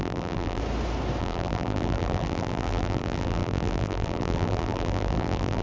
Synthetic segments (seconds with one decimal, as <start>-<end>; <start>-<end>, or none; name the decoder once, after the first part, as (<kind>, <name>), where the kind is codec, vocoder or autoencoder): 0.0-0.6 (vocoder, BigVGAN v2); 1.2-5.6